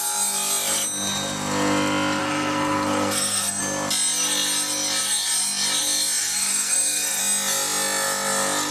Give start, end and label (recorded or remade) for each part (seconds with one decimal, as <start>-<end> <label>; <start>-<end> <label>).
0.0-2.2 recorded; 2.2-3.6 remade; 3.6-6.2 recorded; 6.2-7.2 remade; 7.2-8.7 recorded